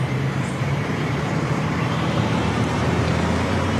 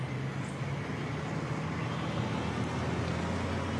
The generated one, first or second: first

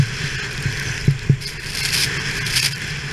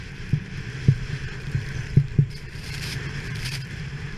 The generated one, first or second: second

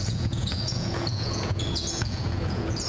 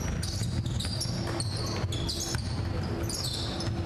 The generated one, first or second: first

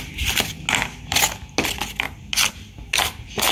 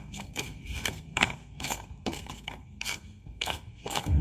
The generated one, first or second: second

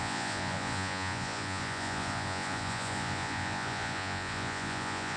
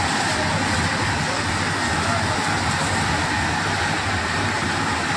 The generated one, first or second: first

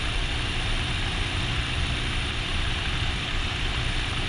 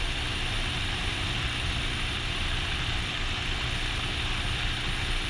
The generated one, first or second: first